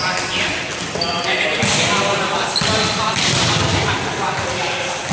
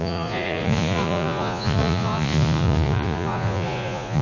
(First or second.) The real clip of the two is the first